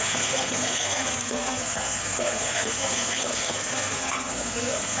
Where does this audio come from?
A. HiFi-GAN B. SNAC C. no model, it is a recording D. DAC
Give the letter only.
B